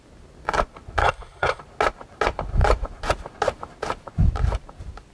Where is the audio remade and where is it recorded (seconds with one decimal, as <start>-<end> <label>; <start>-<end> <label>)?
0.0-1.0 recorded; 1.0-1.6 remade; 1.6-5.1 recorded